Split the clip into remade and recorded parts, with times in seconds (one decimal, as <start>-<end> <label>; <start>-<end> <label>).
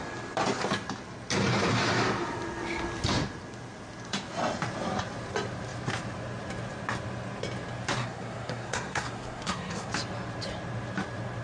0.0-8.0 recorded; 8.0-9.9 remade; 9.9-11.4 recorded